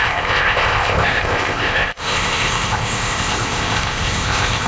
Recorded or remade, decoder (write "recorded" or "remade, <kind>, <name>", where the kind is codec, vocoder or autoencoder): remade, codec, ZipCodec